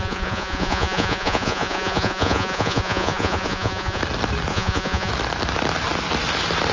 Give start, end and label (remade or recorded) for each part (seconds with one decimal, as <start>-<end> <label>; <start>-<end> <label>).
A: 0.0-4.0 remade; 4.0-4.5 recorded; 4.5-5.1 remade; 5.1-6.7 recorded